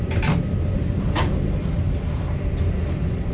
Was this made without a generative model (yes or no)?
yes